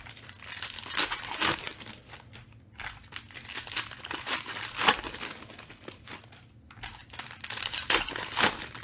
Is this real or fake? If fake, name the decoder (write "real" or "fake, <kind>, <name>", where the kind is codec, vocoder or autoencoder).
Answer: real